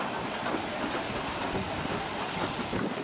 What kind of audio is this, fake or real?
real